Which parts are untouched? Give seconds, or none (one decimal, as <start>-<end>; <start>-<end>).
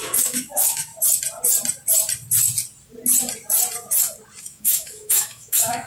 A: 0.9-4.4